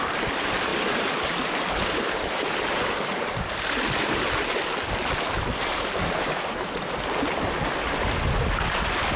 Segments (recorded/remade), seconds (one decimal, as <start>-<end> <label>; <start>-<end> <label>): 0.0-9.2 recorded